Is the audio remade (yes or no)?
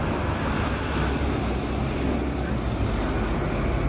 no